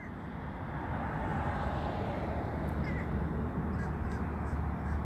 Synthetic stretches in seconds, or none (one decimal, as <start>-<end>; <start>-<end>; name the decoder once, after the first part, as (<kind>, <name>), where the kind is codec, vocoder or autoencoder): none